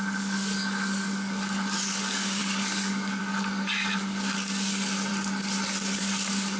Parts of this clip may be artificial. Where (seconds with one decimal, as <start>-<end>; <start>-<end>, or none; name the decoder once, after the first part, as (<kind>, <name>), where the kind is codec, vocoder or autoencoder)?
0.0-5.1 (codec, DAC); 6.0-6.6